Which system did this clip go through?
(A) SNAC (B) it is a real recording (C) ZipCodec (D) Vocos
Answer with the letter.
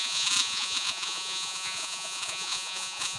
D